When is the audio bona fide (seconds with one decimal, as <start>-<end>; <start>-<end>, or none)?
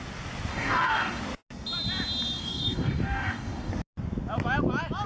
0.0-0.5; 1.2-2.4; 3.7-5.1